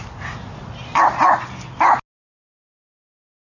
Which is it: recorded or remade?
recorded